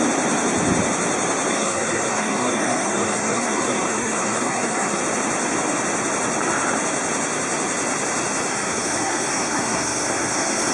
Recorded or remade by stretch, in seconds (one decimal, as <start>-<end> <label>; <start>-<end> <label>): 0.0-1.5 recorded; 1.5-5.0 remade; 5.0-8.5 recorded; 8.5-10.7 remade